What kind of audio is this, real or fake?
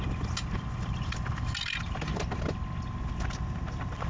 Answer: real